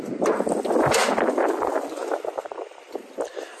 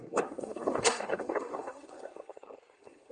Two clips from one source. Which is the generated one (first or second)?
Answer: second